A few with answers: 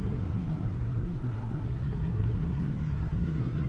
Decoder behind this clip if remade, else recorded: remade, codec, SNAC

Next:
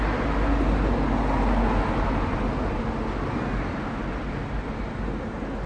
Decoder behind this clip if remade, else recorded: recorded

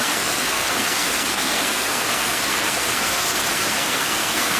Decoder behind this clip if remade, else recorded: remade, codec, SNAC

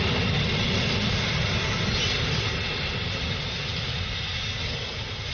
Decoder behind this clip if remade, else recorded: recorded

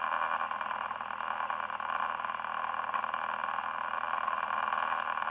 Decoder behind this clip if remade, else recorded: recorded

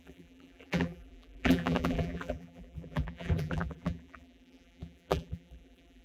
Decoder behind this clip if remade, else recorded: remade, vocoder, BigVGAN v2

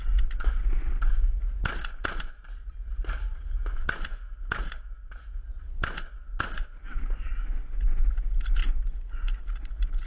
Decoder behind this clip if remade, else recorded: recorded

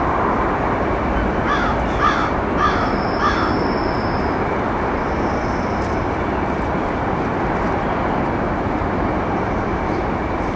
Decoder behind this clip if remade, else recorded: recorded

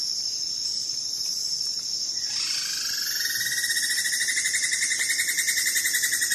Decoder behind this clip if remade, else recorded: recorded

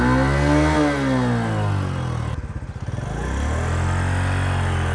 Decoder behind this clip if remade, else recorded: recorded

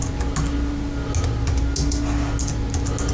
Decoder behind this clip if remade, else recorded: recorded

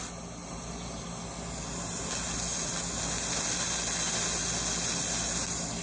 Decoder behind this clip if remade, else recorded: recorded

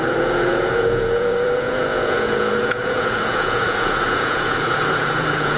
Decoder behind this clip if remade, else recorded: remade, vocoder, Vocos